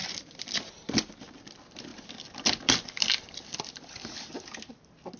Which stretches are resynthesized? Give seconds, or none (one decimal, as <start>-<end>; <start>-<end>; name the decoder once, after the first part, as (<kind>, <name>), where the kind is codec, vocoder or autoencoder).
none